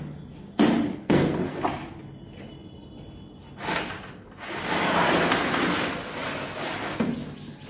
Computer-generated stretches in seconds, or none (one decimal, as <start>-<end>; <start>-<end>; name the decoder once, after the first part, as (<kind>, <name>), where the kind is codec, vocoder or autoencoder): 1.0-1.6 (codec, SNAC)